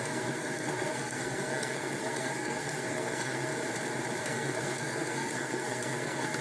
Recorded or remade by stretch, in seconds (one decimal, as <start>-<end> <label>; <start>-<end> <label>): 0.0-3.5 remade; 3.5-4.2 recorded; 4.2-6.4 remade